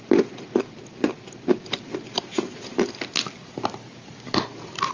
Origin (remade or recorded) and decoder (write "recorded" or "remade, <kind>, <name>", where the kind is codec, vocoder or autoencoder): recorded